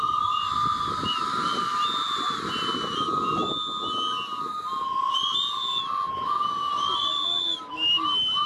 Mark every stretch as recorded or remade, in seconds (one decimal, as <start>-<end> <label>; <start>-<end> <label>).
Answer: 0.0-8.5 recorded